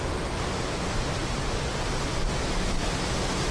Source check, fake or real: real